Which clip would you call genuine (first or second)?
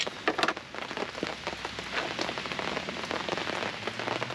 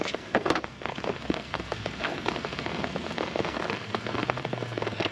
first